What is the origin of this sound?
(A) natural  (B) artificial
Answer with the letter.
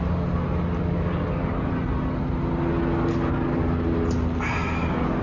A